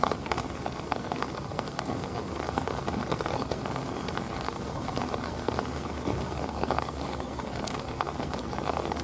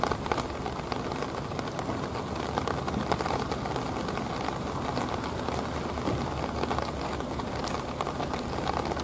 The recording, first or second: second